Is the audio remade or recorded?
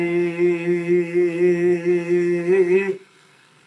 remade